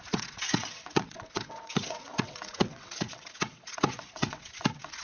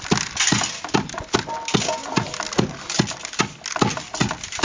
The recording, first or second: second